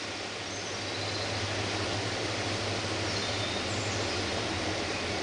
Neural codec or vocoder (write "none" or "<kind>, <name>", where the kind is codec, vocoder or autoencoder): none